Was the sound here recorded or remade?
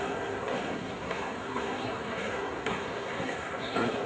remade